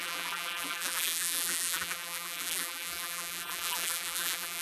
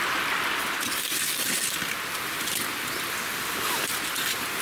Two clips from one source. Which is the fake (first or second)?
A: first